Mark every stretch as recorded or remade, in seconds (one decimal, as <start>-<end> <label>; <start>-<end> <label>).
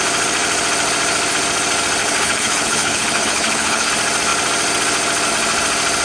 0.0-2.0 recorded; 2.0-3.9 remade; 3.9-6.0 recorded